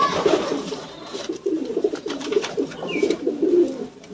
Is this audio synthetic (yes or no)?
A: yes